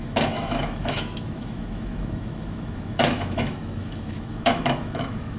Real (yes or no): no